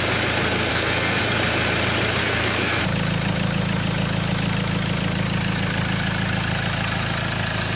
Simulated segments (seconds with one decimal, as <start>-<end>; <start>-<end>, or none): 0.7-1.2; 2.2-2.8